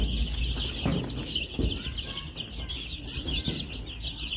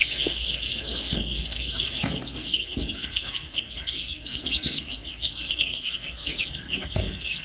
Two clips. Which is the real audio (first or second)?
first